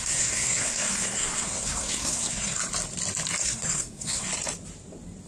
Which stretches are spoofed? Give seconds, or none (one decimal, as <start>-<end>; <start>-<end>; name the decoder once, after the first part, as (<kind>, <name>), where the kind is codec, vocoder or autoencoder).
0.0-2.6 (codec, SNAC); 3.4-4.3